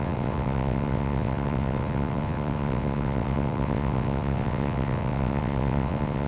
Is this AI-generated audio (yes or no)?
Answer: yes